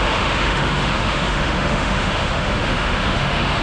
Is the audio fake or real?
fake